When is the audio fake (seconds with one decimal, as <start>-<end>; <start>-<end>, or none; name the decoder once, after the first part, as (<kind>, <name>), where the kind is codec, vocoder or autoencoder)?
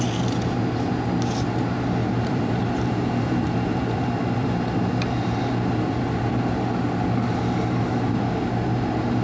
2.0-6.3 (vocoder, BigVGAN v2)